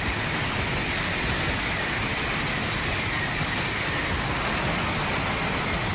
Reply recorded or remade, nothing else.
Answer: recorded